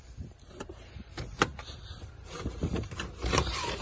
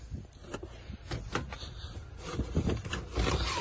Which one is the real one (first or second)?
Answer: second